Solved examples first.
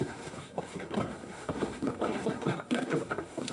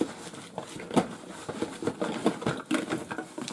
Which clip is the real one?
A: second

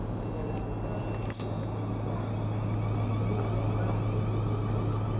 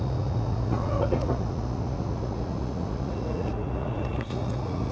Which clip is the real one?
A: first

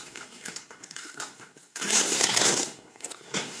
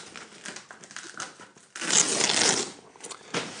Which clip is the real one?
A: second